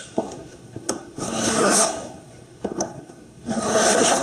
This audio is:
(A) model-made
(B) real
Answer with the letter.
A